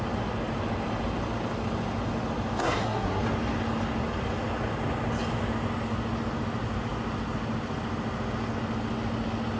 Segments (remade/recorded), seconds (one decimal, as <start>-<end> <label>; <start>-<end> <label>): 0.0-2.6 recorded; 2.6-3.2 remade; 3.2-9.6 recorded